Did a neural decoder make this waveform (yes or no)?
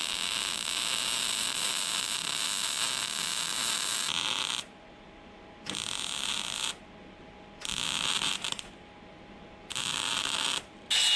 no